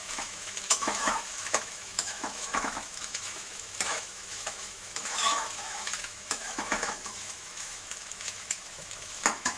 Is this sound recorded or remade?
remade